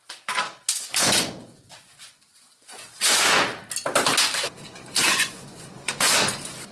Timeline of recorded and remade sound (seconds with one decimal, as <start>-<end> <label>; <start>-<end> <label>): 0.0-0.7 recorded; 0.7-3.5 remade; 3.5-4.4 recorded; 4.4-6.7 remade